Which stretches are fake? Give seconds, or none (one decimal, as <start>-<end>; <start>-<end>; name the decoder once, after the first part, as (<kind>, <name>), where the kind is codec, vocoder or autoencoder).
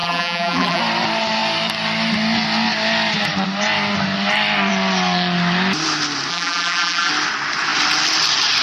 0.0-0.8 (vocoder, BigVGAN v2); 6.3-7.1